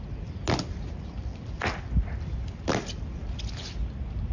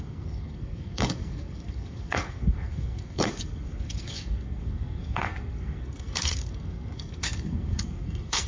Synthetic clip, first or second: second